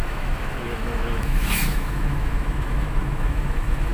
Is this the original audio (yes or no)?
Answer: no